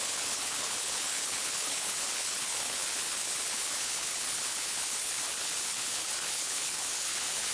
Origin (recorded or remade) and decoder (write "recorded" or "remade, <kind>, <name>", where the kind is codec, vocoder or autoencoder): remade, codec, HILCodec